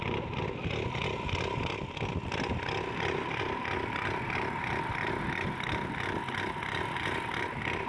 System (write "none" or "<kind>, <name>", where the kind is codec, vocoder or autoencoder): none